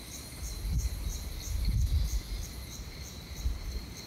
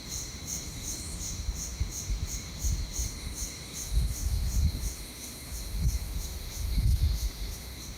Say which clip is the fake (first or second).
second